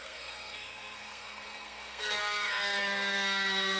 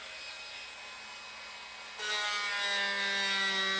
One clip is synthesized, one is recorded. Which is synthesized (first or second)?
first